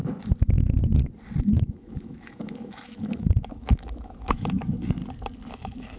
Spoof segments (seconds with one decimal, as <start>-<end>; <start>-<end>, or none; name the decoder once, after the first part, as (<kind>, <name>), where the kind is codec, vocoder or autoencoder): 1.4-5.0 (autoencoder, DAC-VAE); 5.5-6.0